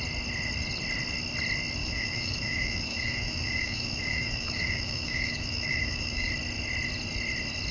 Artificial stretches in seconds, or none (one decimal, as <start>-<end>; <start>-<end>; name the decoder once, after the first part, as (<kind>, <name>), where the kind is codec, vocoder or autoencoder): 1.8-6.3 (autoencoder, DAC-VAE)